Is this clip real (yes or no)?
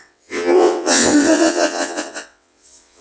no